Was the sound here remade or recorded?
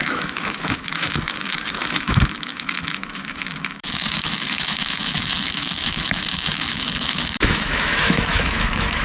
remade